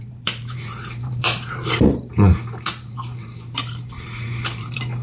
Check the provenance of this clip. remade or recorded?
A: remade